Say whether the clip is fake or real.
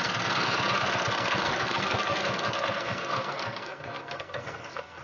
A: fake